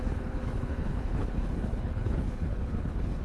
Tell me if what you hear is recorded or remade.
remade